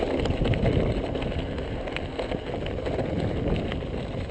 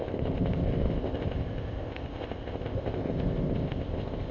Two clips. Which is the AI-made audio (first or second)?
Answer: second